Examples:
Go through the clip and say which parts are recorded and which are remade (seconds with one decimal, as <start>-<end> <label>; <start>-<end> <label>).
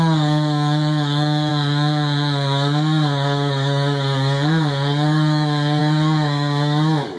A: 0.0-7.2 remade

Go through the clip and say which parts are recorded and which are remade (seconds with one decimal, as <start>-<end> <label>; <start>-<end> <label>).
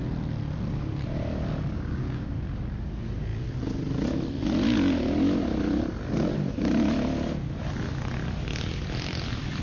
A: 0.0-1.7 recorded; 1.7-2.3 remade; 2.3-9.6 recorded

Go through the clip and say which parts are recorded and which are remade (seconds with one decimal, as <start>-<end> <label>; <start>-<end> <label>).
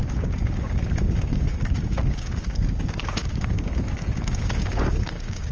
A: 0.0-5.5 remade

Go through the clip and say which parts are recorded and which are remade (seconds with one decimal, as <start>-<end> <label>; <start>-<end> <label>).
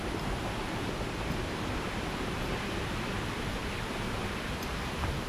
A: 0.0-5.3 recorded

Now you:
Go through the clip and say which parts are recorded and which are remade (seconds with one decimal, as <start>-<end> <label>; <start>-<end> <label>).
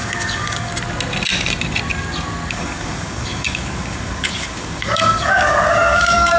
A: 0.0-0.7 remade; 0.7-2.5 recorded; 2.5-6.4 remade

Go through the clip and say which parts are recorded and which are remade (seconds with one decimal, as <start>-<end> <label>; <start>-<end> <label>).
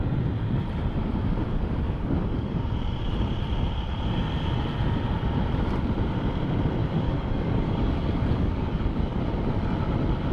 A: 0.0-1.4 recorded; 1.4-2.6 remade; 2.6-6.8 recorded; 6.8-9.2 remade; 9.2-10.3 recorded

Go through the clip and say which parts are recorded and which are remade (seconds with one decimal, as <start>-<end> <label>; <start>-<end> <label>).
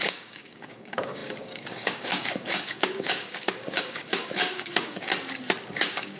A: 0.0-5.1 remade; 5.1-5.7 recorded; 5.7-6.2 remade